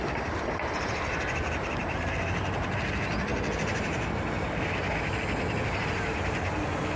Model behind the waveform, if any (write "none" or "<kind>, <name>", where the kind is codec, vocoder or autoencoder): none